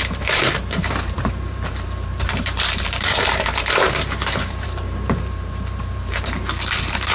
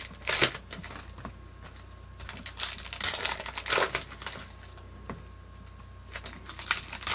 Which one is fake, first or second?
first